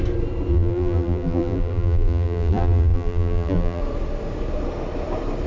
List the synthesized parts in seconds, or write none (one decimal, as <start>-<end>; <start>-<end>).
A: 0.5-3.8